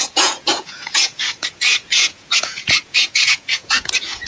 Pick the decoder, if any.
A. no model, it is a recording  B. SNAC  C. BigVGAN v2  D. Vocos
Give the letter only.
D